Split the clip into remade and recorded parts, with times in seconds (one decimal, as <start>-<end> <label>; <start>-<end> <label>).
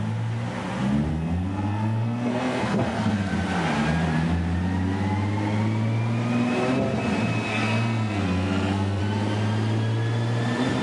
0.0-1.1 recorded; 1.1-3.3 remade; 3.3-7.5 recorded; 7.5-9.0 remade; 9.0-10.8 recorded